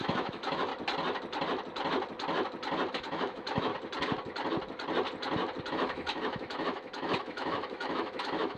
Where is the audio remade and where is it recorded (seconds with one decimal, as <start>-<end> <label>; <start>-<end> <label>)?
0.0-0.7 remade; 0.7-2.9 recorded; 2.9-3.7 remade; 3.7-5.7 recorded; 5.7-8.6 remade